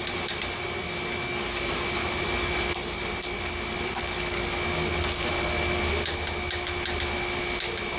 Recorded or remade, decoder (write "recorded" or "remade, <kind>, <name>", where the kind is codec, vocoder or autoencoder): recorded